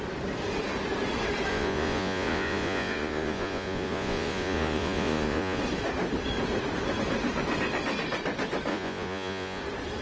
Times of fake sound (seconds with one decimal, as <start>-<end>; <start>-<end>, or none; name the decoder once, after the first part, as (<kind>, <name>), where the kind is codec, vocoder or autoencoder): 1.5-5.6 (vocoder, Vocos); 8.7-9.6

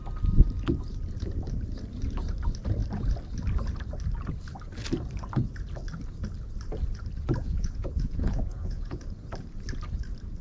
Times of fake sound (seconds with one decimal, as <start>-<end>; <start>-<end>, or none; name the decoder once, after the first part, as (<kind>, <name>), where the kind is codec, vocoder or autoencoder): 7.4-9.0 (vocoder, Vocos)

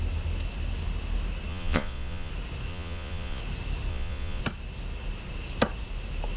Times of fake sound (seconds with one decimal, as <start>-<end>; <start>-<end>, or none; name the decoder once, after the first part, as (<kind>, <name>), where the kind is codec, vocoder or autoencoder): 1.5-2.3 (vocoder, Vocos); 2.7-3.4; 3.9-4.4

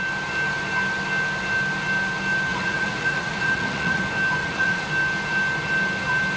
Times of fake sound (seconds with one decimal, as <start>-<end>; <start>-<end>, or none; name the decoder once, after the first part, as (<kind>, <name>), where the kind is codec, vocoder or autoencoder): 2.5-4.0 (vocoder, Vocos); 4.4-4.9

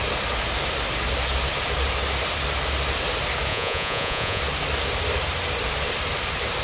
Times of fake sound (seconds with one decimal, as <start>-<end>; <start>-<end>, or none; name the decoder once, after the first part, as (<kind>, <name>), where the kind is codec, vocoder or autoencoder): 3.5-4.4 (vocoder, Vocos)

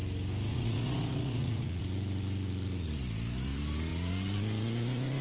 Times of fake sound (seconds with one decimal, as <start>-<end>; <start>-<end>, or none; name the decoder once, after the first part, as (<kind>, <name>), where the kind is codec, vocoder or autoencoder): 0.5-1.8 (vocoder, Vocos)